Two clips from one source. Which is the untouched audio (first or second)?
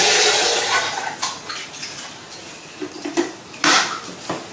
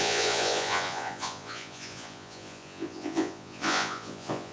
first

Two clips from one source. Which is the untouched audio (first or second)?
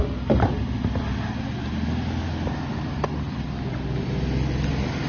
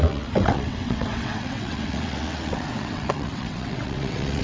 first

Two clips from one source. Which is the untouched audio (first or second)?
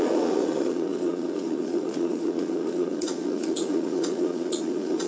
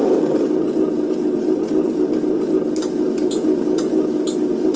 second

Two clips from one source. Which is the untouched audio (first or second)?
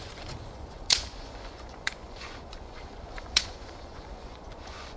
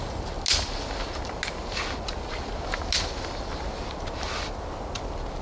second